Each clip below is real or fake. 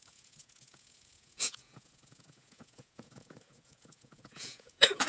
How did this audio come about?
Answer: fake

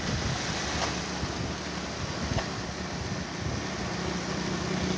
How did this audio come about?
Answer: real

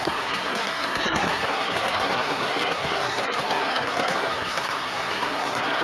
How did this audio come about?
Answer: fake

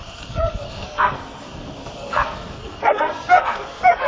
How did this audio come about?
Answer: fake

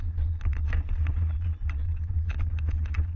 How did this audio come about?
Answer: fake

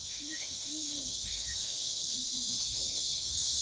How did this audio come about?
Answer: fake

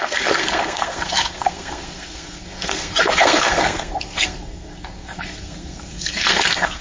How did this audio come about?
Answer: fake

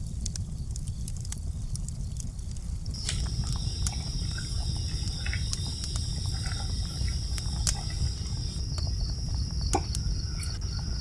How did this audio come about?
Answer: real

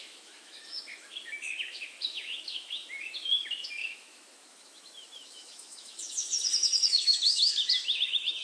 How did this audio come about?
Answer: fake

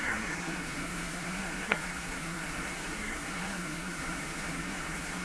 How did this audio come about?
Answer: fake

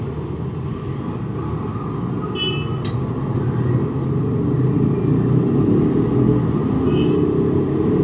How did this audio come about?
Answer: real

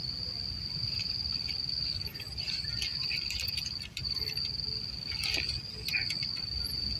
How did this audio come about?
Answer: real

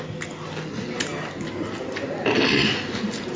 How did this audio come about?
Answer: real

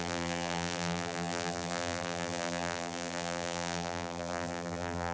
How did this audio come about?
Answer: fake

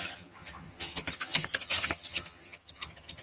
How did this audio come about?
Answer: fake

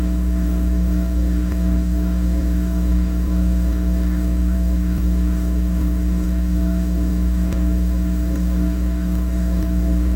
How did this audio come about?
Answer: fake